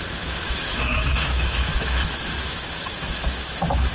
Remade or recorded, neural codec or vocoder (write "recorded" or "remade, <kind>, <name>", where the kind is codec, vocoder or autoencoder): remade, autoencoder, DAC-VAE